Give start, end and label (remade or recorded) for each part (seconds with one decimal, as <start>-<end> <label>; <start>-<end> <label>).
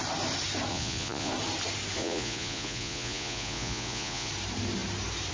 0.0-0.7 recorded; 0.7-1.3 remade; 1.3-2.0 recorded; 2.0-4.3 remade; 4.3-5.3 recorded